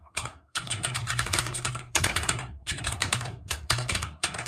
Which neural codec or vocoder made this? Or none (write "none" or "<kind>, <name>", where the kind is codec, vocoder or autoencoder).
codec, SNAC